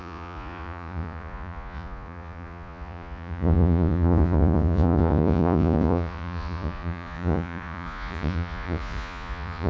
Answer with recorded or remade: remade